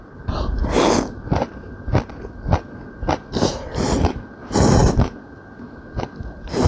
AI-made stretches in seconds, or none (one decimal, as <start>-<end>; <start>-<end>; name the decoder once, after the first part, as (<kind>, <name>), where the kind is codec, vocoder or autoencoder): none